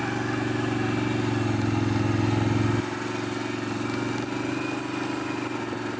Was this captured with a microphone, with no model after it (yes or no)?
yes